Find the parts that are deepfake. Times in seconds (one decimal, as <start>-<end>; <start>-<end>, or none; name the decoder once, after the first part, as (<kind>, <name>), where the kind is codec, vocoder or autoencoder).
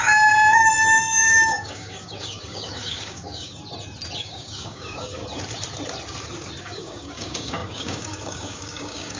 0.0-3.6 (codec, DAC); 4.2-5.2; 6.6-9.2